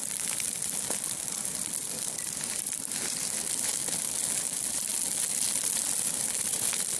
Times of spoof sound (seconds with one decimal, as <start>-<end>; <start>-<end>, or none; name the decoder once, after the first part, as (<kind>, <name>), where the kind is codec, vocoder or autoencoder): none